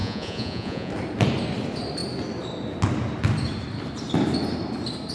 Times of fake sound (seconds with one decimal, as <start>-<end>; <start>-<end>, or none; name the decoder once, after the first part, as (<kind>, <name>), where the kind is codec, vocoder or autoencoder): 0.0-0.9 (vocoder, Vocos)